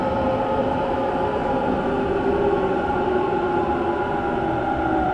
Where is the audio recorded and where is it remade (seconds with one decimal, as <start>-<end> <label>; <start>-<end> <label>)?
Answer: 0.0-0.6 recorded; 0.6-1.4 remade; 1.4-4.5 recorded; 4.5-5.1 remade